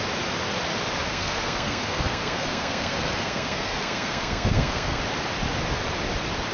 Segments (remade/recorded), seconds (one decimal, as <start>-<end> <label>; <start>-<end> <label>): 0.0-1.1 recorded; 1.1-5.0 remade; 5.0-6.5 recorded